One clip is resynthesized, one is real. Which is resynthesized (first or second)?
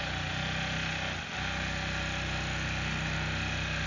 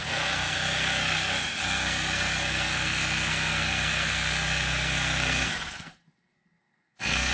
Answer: second